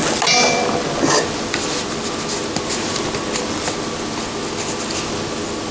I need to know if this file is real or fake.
real